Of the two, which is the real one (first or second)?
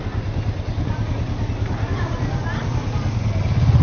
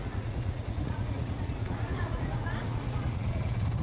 first